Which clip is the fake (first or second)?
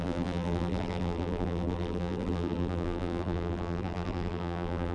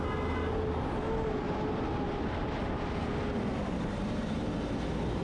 first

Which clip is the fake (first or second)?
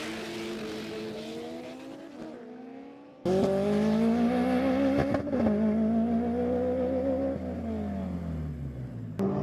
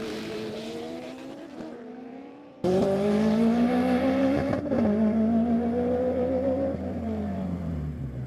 second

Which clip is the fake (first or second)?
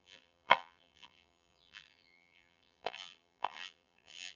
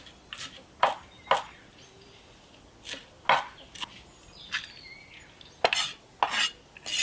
first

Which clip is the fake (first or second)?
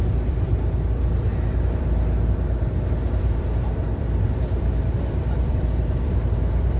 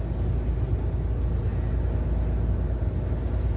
first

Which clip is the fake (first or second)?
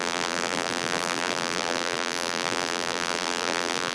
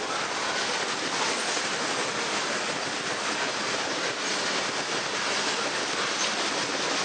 first